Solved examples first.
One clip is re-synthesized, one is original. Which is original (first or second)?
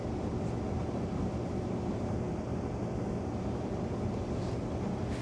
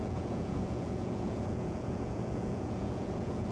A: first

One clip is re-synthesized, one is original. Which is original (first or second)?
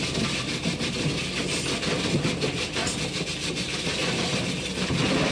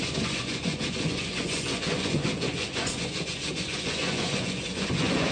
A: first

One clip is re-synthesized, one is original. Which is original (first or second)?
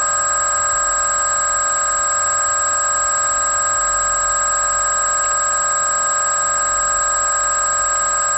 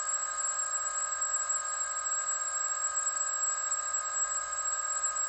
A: first